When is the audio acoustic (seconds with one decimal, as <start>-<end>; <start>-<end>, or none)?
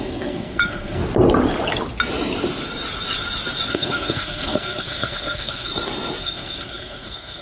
1.0-3.7; 5.7-6.2